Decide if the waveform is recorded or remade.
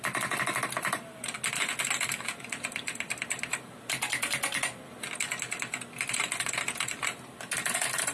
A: recorded